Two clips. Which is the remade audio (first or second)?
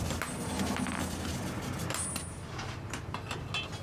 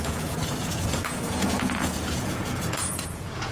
second